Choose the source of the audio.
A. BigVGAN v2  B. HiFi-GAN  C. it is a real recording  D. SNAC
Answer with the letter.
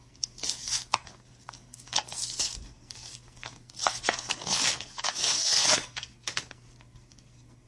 D